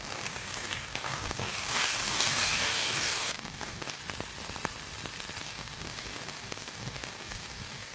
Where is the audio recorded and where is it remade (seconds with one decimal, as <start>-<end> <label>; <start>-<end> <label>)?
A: 0.0-4.0 remade; 4.0-5.4 recorded; 5.4-7.9 remade